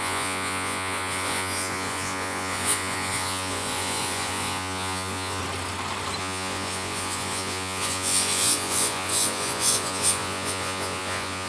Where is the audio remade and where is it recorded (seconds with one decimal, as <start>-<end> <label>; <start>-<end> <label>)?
0.0-5.4 remade; 5.4-6.2 recorded; 6.2-11.5 remade